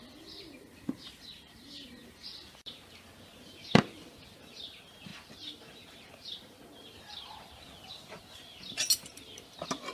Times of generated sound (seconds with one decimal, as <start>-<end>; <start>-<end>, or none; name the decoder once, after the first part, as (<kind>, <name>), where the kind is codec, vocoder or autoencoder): none